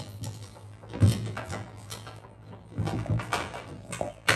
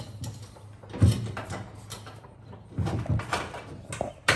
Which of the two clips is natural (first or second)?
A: second